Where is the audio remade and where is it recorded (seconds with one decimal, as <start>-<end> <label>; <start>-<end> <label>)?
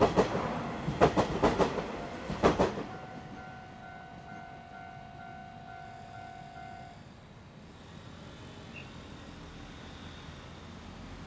0.0-11.3 recorded